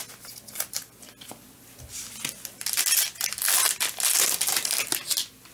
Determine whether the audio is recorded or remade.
recorded